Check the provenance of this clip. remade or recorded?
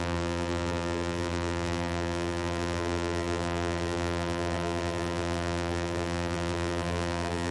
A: remade